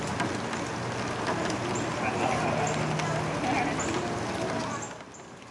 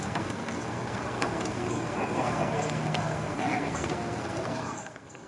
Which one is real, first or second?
first